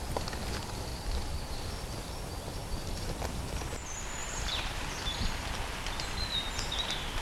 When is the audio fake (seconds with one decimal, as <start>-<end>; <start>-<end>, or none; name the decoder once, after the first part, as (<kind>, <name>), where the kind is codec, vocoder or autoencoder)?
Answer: 0.9-1.6 (vocoder, BigVGAN v2); 2.6-3.2; 4.2-4.9